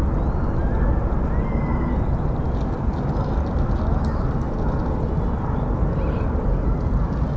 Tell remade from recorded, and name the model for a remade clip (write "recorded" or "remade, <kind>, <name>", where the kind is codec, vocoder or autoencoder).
recorded